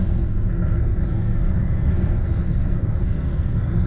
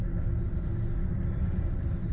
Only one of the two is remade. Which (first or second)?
first